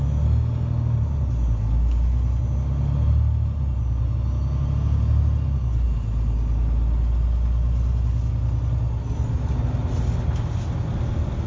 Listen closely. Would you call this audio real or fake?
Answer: real